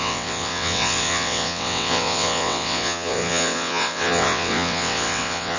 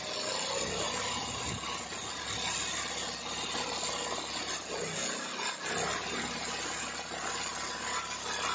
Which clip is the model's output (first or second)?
first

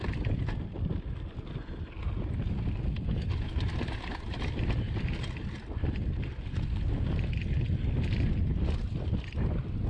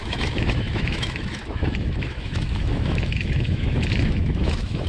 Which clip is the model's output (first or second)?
second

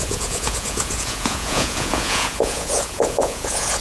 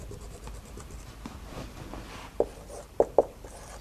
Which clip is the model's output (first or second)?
first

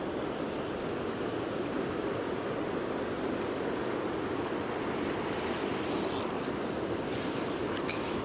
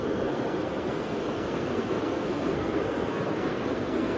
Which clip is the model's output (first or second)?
second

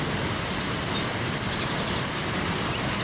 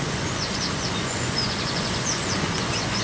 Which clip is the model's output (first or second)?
second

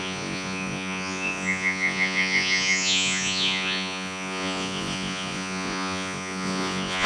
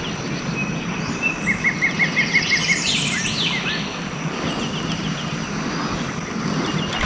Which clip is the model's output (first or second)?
first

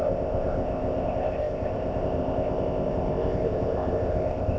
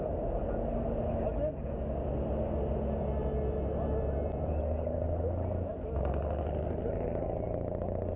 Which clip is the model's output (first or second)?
first